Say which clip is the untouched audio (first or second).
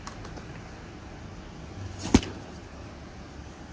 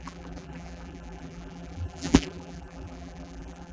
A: first